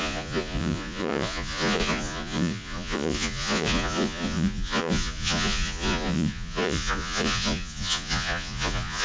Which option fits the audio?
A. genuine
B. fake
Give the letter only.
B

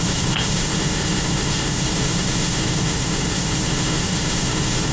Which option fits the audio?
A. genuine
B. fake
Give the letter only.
B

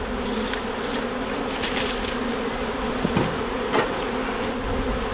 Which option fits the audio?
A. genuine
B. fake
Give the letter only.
A